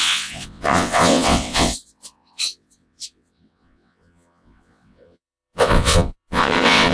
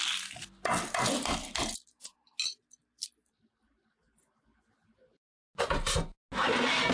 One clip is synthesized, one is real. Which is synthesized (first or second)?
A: first